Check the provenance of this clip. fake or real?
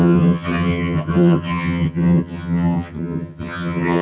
fake